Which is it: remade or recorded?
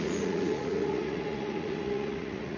remade